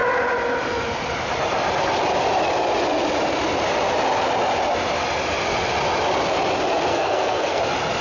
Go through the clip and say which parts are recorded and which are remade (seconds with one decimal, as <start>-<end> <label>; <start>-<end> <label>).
0.0-6.9 recorded; 6.9-7.6 remade; 7.6-8.0 recorded